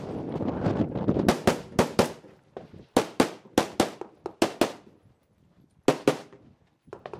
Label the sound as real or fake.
real